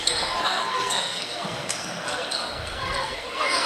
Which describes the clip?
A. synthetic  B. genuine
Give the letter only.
A